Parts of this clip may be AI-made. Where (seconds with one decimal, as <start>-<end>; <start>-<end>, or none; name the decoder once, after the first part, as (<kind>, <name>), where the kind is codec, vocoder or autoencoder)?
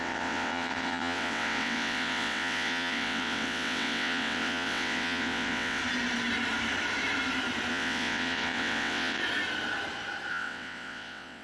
0.0-5.8 (vocoder, WaveNeXt); 7.7-9.2; 10.3-11.4